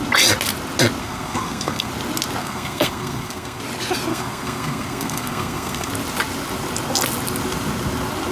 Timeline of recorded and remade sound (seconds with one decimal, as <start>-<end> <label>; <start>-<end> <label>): 0.0-1.0 recorded; 1.0-1.9 remade; 1.9-2.4 recorded; 2.4-3.6 remade; 3.6-4.1 recorded; 4.1-5.9 remade; 5.9-8.3 recorded